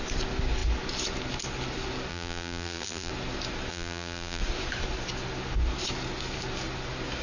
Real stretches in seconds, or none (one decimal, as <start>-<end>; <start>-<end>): 0.0-2.1; 3.1-3.7; 4.4-7.2